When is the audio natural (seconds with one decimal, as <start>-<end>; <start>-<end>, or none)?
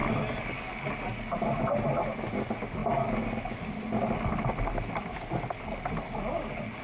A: 0.0-6.8